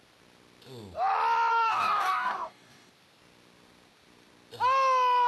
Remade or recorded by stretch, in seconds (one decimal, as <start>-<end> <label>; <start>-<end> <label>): 0.0-1.5 recorded; 1.5-2.9 remade; 2.9-5.3 recorded